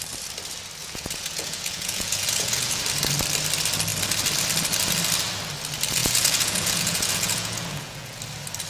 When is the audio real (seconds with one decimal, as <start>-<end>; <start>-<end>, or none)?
0.0-0.8; 2.8-6.0; 8.2-8.7